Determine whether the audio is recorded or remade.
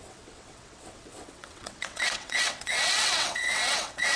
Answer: remade